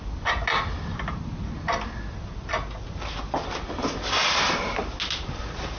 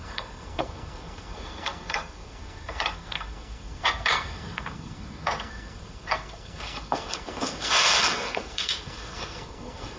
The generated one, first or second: second